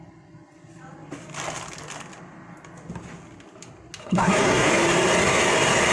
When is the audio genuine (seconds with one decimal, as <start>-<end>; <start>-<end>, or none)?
0.0-4.0; 4.7-5.9